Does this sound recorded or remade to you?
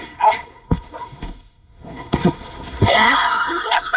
remade